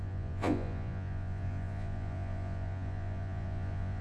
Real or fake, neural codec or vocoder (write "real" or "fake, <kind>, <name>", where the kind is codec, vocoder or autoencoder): fake, vocoder, Vocos